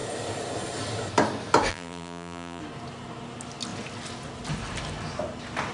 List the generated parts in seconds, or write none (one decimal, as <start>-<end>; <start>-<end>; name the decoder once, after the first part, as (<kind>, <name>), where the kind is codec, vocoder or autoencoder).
1.7-2.6 (vocoder, BigVGAN v2)